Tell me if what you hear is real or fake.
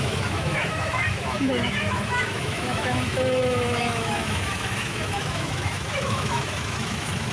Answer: fake